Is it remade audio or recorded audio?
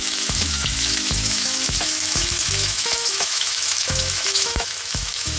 remade